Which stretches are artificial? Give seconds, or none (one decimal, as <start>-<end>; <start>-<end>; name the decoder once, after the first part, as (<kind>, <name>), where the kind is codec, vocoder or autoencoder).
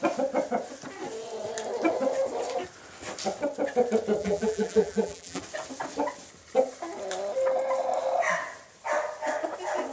4.2-5.4 (vocoder, BigVGAN v2)